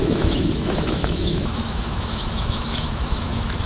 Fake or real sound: fake